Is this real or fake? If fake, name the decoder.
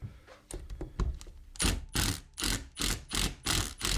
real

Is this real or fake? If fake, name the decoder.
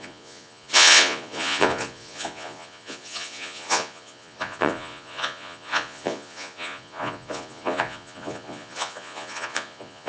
fake, vocoder, Vocos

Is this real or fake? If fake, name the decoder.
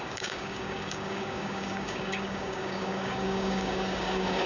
fake, codec, DAC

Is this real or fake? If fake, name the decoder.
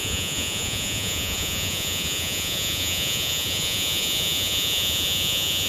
fake, vocoder, Vocos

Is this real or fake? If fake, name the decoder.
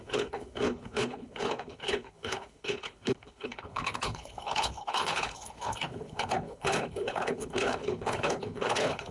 fake, codec, HILCodec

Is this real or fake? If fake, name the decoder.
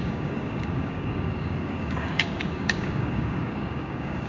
fake, codec, DAC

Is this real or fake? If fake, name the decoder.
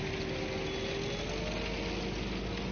real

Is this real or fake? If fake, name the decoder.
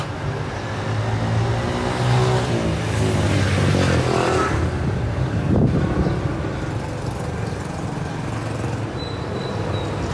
real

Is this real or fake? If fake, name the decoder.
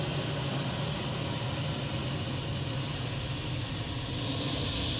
real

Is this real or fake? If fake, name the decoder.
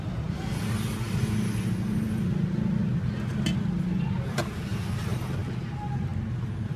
real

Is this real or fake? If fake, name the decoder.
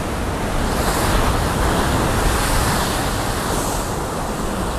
real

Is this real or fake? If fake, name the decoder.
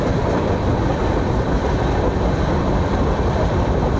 real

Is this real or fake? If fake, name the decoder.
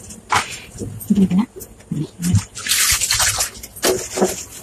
real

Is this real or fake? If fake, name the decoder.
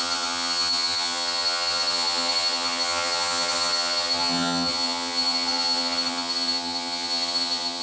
fake, vocoder, HiFi-GAN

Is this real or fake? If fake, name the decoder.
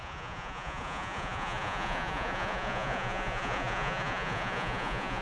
fake, vocoder, Vocos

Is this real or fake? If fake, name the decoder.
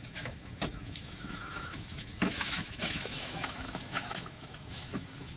fake, autoencoder, DAC-VAE